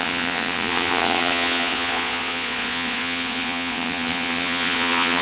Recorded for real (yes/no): no